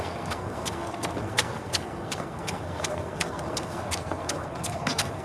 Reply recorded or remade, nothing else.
remade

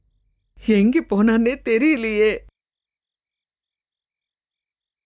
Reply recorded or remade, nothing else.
recorded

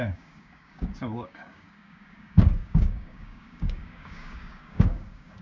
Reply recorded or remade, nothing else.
remade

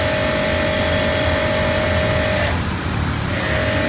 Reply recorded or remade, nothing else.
recorded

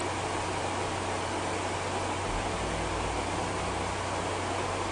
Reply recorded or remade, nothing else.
recorded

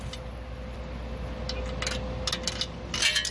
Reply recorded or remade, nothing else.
recorded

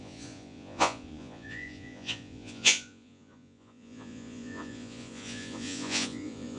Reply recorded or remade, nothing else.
remade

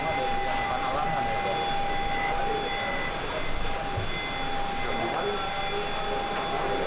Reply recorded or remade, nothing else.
recorded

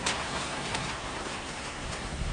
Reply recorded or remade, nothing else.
remade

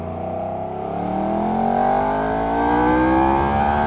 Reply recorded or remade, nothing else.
recorded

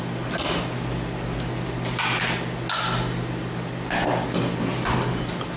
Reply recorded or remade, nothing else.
recorded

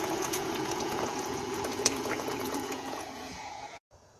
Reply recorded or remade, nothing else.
remade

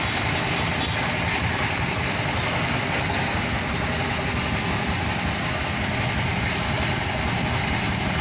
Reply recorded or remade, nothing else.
recorded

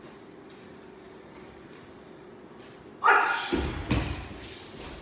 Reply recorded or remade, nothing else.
recorded